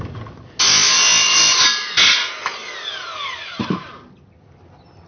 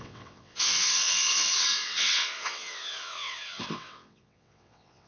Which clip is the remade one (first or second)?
second